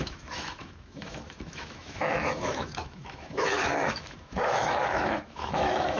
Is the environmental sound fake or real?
fake